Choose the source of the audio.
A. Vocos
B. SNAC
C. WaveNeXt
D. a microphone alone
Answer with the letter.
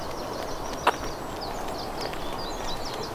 D